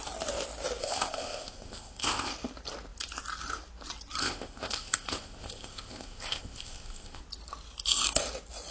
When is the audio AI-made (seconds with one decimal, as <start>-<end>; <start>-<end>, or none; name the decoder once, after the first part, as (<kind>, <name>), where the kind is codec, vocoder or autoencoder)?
0.8-2.3 (codec, ZipCodec); 4.2-7.2